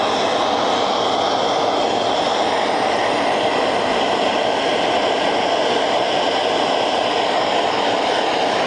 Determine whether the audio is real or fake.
real